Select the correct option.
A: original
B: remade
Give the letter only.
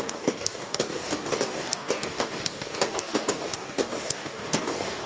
B